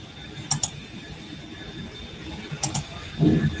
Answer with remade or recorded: recorded